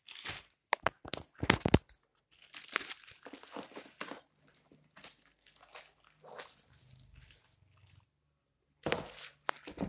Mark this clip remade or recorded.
recorded